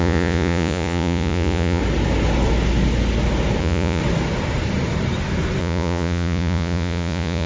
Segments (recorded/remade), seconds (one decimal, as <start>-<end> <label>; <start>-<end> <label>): 0.0-1.8 remade; 1.8-3.6 recorded; 3.6-4.0 remade; 4.0-5.6 recorded; 5.6-7.5 remade